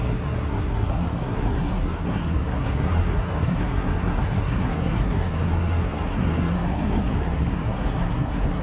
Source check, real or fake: fake